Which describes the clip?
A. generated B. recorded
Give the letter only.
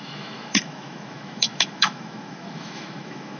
A